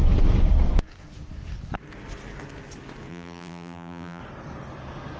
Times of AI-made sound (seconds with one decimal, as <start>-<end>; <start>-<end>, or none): 3.1-4.2